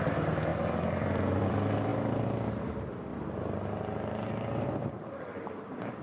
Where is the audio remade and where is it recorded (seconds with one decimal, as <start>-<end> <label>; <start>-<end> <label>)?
0.0-1.9 remade; 1.9-2.5 recorded; 2.5-3.1 remade; 3.1-4.2 recorded; 4.2-6.0 remade